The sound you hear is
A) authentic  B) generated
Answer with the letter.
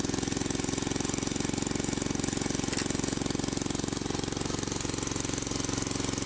A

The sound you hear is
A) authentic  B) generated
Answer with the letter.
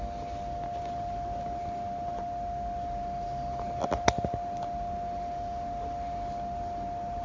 A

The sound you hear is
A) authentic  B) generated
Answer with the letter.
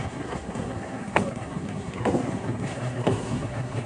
B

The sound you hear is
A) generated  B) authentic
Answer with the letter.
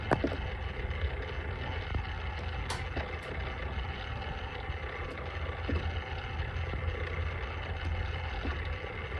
B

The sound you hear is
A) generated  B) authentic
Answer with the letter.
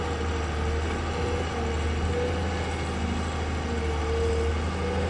B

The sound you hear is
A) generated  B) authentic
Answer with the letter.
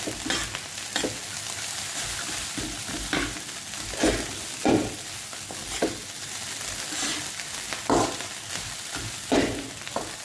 B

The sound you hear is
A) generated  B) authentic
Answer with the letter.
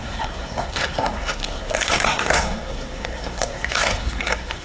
A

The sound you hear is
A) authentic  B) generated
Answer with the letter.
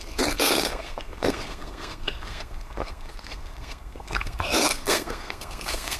B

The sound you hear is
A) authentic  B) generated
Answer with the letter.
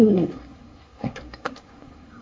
B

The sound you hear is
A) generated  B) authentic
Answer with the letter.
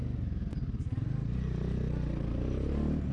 B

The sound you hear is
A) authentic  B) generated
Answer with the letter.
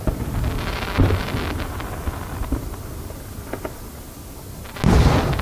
A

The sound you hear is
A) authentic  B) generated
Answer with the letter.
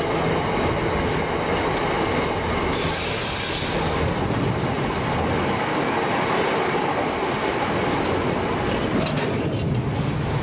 A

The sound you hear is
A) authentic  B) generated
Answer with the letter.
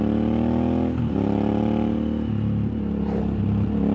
A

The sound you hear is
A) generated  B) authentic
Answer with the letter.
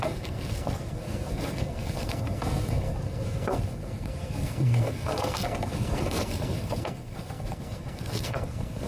A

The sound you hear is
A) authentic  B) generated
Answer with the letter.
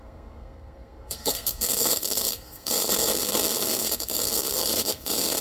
B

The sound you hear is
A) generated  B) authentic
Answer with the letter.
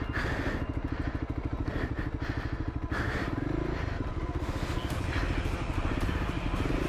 B